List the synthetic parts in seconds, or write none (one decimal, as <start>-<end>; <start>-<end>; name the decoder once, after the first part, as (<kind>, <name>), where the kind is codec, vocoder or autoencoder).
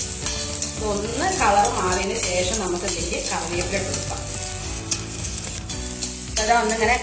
4.6-5.7 (codec, SNAC)